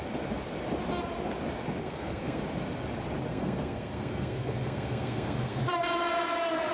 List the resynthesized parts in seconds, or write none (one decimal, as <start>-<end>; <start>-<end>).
1.8-2.4; 3.3-5.6